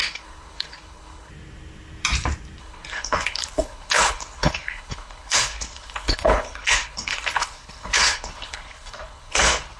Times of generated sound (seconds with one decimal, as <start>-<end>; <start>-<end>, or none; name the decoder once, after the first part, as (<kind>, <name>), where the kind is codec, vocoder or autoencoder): 0.0-1.3 (codec, HILCodec); 2.6-9.8